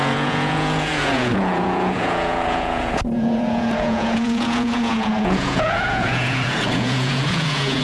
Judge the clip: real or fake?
fake